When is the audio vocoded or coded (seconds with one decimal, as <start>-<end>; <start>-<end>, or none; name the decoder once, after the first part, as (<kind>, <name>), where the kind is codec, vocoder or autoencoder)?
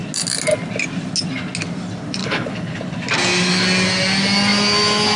2.2-2.8 (codec, HILCodec)